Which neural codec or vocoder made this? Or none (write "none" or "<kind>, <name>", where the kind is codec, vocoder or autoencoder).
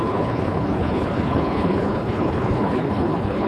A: codec, HILCodec